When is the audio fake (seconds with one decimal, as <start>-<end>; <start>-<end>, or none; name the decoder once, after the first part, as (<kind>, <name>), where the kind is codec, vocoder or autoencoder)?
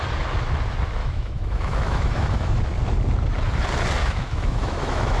1.0-2.6 (autoencoder, DAC-VAE); 4.0-5.2